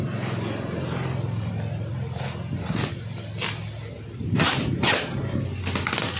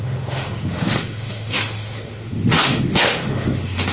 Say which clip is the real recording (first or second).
first